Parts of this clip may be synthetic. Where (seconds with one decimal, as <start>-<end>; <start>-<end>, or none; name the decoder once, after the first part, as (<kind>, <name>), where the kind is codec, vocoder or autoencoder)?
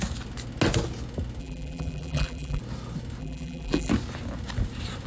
1.4-2.6 (vocoder, BigVGAN v2); 3.2-3.9